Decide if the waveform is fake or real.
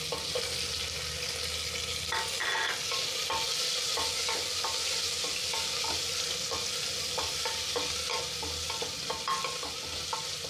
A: real